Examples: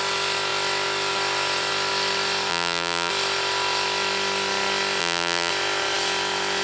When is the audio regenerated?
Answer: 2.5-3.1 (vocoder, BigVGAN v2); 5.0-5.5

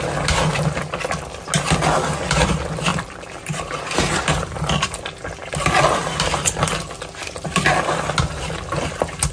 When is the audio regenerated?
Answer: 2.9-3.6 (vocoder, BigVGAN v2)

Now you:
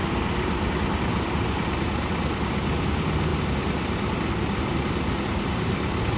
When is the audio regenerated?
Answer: none